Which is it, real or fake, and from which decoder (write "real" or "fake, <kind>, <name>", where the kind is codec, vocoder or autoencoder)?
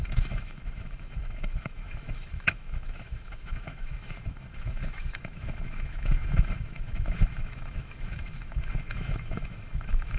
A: fake, autoencoder, DAC-VAE